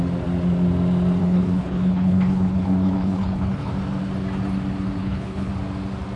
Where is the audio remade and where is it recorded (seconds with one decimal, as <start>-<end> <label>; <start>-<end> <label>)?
0.0-1.2 recorded; 1.2-3.7 remade; 3.7-5.0 recorded; 5.0-5.5 remade; 5.5-6.2 recorded